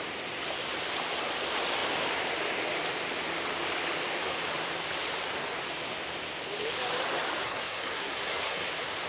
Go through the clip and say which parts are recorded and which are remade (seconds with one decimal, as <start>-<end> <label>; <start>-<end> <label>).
0.0-7.4 recorded; 7.4-8.6 remade; 8.6-9.1 recorded